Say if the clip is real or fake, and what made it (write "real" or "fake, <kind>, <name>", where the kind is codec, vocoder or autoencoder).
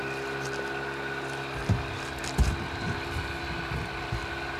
real